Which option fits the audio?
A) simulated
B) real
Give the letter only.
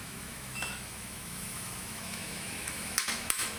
A